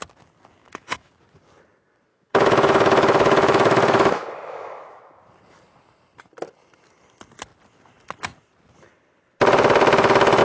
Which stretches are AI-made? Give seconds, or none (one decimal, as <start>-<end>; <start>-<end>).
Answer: 0.6-1.1; 2.1-5.2